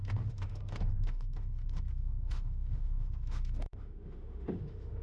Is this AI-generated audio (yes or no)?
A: yes